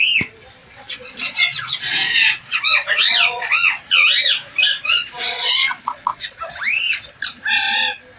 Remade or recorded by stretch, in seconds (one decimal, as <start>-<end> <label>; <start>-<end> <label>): 0.0-0.6 recorded; 0.6-3.8 remade; 3.8-4.7 recorded; 4.7-6.4 remade; 6.4-8.2 recorded